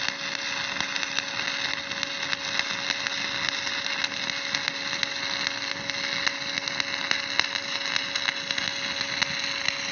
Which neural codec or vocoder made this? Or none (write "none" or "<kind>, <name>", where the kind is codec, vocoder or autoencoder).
none